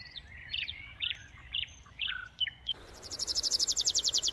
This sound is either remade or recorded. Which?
remade